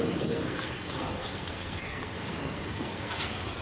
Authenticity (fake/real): fake